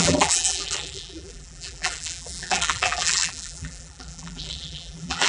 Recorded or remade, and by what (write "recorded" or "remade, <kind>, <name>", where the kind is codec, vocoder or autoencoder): remade, vocoder, BigVGAN v2